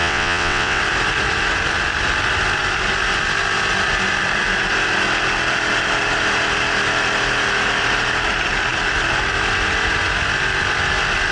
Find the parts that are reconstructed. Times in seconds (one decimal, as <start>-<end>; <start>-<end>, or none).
0.0-0.8